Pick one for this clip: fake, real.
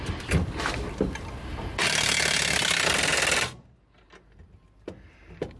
real